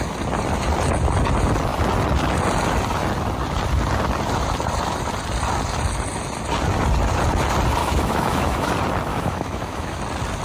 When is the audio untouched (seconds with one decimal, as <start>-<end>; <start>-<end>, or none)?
0.0-7.8; 8.7-9.1; 10.0-10.4